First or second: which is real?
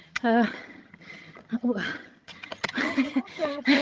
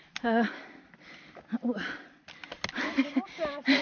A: second